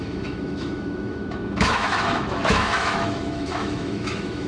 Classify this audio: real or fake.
fake